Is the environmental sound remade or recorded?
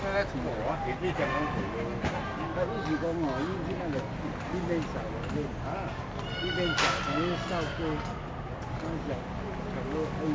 recorded